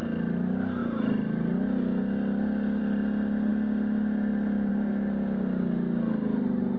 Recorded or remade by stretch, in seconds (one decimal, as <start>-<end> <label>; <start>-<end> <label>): 0.0-6.8 recorded